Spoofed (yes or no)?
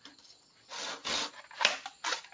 no